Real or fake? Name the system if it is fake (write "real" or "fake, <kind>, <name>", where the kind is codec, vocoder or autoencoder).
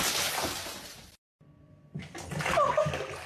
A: real